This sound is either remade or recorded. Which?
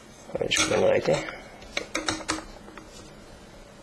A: recorded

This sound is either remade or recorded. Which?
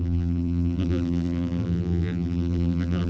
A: remade